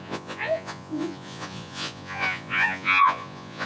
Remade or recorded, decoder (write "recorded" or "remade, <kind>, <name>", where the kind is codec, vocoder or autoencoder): remade, vocoder, Vocos